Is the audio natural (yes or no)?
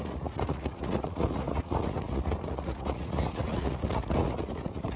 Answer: no